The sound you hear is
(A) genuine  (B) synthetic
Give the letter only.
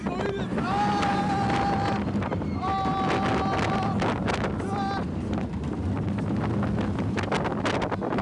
A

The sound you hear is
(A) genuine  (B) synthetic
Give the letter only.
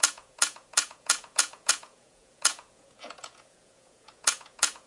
B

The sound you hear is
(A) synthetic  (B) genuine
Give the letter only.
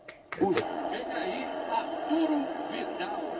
A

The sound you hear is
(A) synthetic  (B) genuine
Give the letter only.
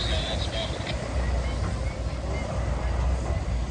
B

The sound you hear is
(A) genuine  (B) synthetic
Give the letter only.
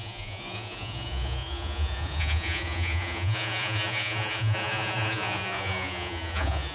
B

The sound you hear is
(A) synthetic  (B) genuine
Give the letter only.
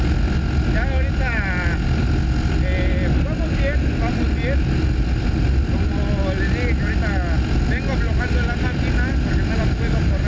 B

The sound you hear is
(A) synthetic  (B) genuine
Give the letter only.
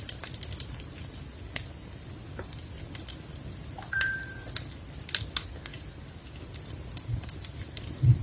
B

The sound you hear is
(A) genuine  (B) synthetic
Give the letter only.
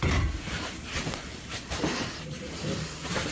A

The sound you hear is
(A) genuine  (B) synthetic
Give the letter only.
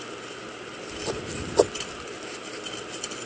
A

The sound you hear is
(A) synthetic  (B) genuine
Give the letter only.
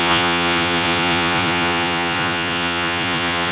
A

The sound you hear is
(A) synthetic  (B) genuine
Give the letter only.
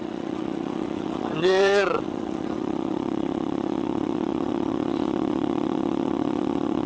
A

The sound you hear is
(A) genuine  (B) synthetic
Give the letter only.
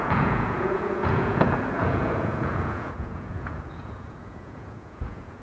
B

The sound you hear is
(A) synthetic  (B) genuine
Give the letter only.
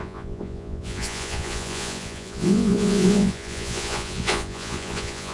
A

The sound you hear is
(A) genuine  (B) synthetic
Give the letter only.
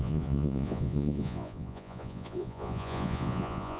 B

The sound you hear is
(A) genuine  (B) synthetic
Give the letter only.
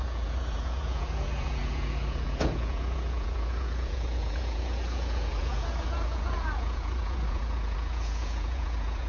B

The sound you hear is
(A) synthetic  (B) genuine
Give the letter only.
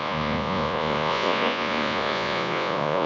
A